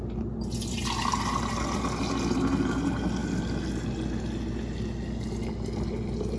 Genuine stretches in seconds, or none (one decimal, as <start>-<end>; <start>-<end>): 0.0-6.4